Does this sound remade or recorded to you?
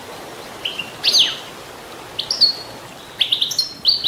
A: recorded